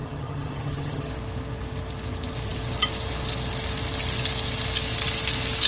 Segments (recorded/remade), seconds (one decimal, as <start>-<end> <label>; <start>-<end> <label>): 0.0-1.1 remade; 1.1-5.7 recorded